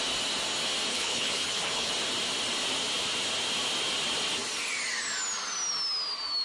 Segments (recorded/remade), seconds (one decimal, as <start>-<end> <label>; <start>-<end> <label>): 0.0-0.9 recorded; 0.9-1.9 remade; 1.9-6.4 recorded